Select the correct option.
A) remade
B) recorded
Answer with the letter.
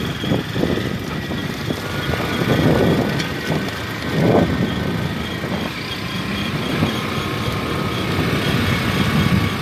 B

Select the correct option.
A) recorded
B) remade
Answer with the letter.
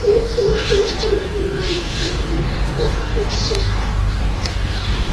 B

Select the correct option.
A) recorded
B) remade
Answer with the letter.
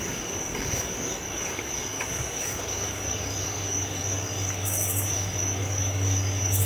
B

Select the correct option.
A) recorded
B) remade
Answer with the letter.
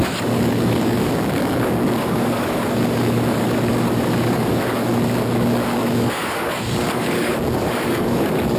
B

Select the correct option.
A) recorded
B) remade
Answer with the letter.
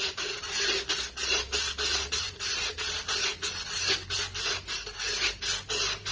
A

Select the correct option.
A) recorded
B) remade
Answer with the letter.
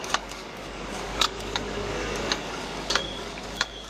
B